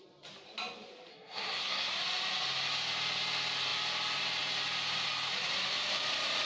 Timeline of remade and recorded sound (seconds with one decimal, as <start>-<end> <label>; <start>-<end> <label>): 0.0-1.1 recorded; 1.1-1.9 remade; 1.9-6.5 recorded